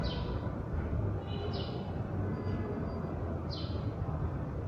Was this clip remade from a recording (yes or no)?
no